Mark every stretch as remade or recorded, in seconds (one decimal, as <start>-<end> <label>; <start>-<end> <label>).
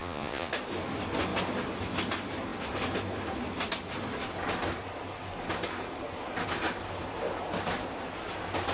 0.0-0.5 remade; 0.5-8.7 recorded